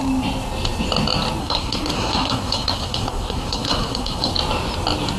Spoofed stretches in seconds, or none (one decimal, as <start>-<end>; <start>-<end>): 1.4-4.3